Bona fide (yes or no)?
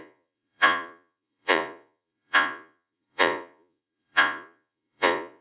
no